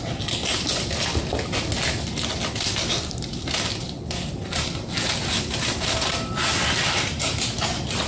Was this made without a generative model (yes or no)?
yes